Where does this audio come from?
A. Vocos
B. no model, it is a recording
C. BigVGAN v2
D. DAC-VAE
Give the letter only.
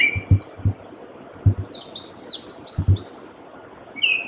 B